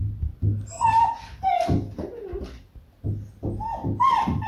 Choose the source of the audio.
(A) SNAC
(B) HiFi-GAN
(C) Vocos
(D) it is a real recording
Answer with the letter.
D